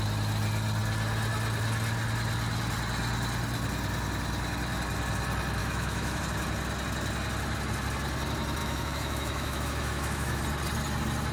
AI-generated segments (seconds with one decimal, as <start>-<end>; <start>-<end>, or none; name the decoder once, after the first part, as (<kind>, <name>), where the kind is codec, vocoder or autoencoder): 5.6-6.2 (autoencoder, DAC-VAE); 8.6-10.4